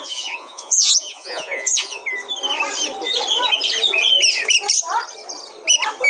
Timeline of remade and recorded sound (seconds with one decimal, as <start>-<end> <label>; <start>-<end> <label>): 0.0-2.0 remade; 2.0-6.1 recorded